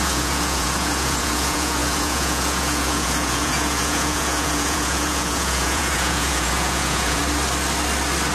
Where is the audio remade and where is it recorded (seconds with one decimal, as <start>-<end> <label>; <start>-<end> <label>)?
0.0-7.2 remade; 7.2-8.3 recorded